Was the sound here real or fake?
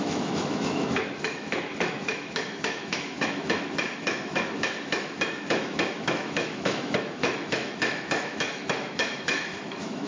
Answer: fake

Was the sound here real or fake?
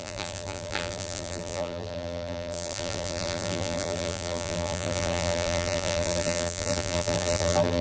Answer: fake